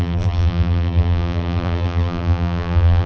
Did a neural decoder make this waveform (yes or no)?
yes